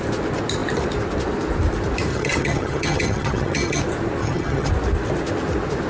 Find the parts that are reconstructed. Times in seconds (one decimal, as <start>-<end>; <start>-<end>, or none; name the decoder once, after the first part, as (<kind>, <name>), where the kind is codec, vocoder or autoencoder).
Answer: 2.1-3.8 (vocoder, HiFi-GAN); 4.2-4.7